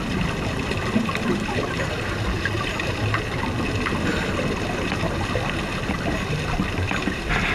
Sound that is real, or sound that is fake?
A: real